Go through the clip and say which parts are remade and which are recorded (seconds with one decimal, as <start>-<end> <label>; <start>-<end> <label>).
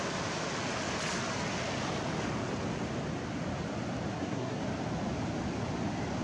0.0-4.1 recorded; 4.1-4.6 remade; 4.6-6.2 recorded